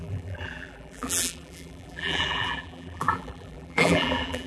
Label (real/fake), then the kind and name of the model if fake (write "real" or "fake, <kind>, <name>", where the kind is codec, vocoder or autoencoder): fake, vocoder, BigVGAN v2